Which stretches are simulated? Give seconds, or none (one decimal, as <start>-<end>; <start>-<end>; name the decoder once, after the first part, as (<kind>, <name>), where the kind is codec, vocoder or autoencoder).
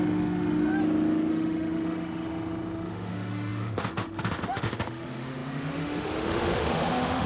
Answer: 0.0-0.7 (autoencoder, DAC-VAE); 1.3-7.3